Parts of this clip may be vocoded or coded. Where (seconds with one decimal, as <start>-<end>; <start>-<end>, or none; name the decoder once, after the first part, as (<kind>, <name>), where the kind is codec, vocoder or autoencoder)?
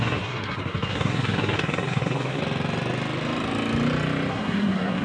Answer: 0.0-2.4 (codec, SNAC); 4.3-5.0